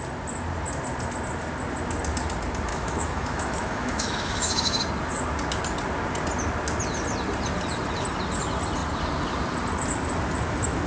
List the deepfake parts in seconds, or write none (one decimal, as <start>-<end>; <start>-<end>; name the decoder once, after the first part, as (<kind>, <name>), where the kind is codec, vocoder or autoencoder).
2.7-4.8 (autoencoder, DAC-VAE)